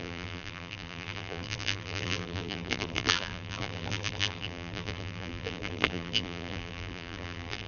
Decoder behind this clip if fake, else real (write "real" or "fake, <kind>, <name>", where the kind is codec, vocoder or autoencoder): fake, vocoder, BigVGAN v2